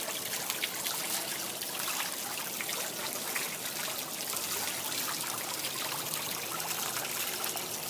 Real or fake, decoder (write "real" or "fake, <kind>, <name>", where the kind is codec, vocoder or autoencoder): real